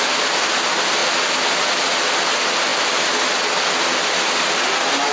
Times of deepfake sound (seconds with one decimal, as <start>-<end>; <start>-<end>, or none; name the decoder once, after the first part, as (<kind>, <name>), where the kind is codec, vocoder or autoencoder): none